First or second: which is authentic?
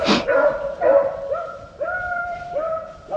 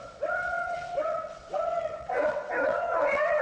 first